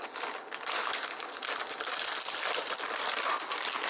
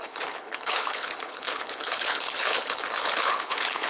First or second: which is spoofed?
second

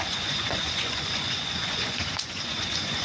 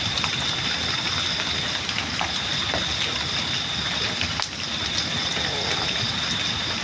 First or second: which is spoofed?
first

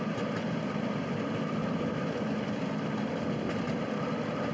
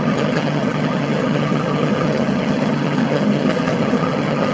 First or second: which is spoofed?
second